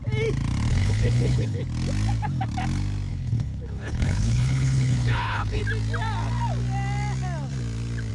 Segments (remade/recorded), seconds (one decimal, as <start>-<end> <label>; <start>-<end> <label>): 0.0-0.7 recorded; 0.7-1.6 remade; 1.6-3.1 recorded; 3.1-5.6 remade; 5.6-8.1 recorded